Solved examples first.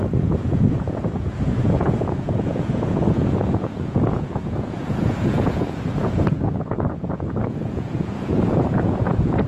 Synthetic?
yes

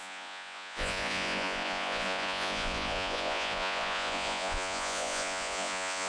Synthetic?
yes